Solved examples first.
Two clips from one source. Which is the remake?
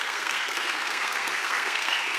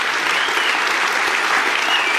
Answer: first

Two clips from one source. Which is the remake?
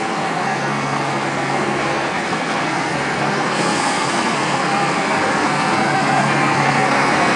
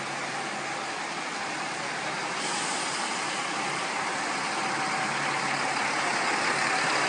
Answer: first